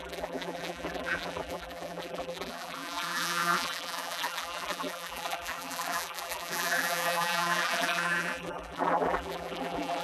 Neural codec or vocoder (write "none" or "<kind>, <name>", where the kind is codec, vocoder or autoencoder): vocoder, BigVGAN v2